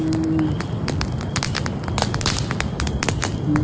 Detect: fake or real real